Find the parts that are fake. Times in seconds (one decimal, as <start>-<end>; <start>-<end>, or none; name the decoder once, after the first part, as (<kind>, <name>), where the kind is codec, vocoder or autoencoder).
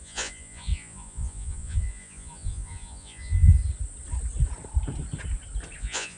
0.0-3.6 (vocoder, Vocos); 5.8-6.2